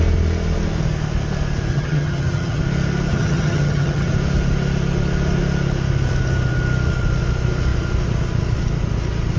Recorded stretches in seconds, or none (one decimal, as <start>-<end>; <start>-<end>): 0.0-1.7; 2.6-3.1; 4.1-9.4